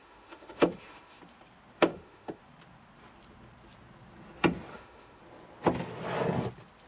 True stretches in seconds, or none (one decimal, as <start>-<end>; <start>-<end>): 1.2-1.9; 2.4-4.7; 5.2-6.9